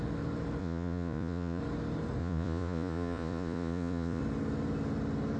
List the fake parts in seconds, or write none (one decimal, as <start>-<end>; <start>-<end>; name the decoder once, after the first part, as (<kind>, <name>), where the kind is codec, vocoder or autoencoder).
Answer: 0.6-1.6 (vocoder, Vocos); 2.2-4.2